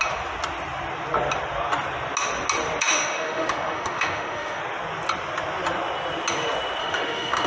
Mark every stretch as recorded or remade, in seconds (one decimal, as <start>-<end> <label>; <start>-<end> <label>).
0.0-2.8 recorded; 2.8-4.6 remade; 4.6-6.8 recorded; 6.8-7.5 remade